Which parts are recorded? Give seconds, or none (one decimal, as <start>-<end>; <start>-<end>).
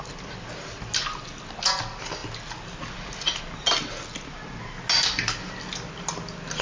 0.0-6.6